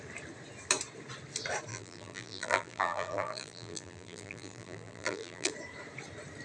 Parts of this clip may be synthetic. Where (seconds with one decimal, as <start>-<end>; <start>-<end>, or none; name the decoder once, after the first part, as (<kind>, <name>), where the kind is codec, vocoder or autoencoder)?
1.7-5.5 (vocoder, BigVGAN v2)